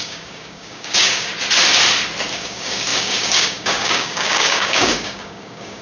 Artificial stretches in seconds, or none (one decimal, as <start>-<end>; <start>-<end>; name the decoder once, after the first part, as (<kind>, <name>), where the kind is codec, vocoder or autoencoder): 0.0-1.3 (codec, DAC); 2.3-5.8